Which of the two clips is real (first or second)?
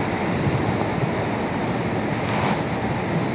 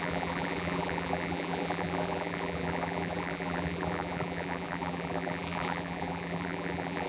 first